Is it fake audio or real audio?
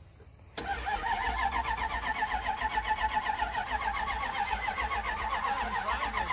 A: real